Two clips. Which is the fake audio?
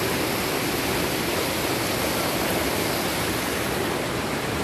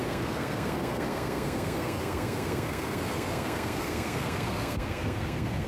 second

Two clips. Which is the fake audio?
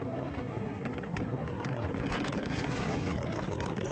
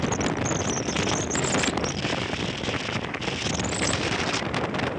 first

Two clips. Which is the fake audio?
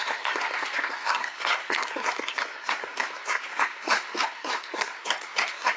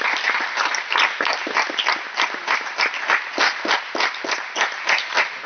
first